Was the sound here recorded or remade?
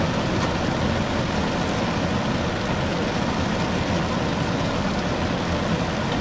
recorded